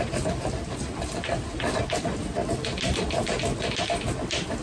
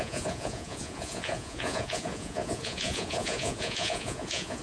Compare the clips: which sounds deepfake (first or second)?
second